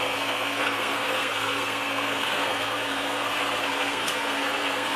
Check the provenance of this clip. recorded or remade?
remade